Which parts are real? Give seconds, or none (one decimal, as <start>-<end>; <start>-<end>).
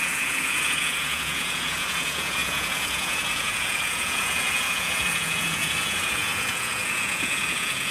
none